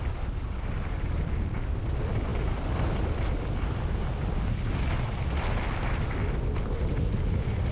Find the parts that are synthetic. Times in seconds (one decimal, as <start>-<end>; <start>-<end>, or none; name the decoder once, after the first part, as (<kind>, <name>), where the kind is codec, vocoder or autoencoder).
none